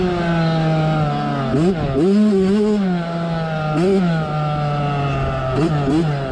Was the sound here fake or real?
real